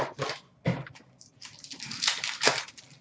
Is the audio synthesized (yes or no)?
no